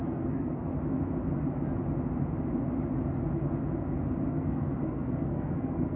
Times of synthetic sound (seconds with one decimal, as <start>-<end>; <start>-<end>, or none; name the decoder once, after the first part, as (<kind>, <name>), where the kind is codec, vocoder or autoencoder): 0.0-0.7 (codec, SNAC); 4.3-6.0